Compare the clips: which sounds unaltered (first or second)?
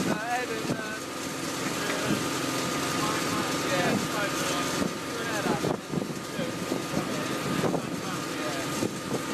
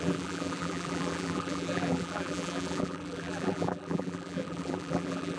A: first